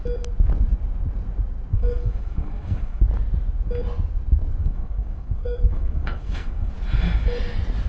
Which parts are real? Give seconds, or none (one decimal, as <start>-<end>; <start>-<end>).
0.0-1.7; 3.0-4.6; 6.7-7.9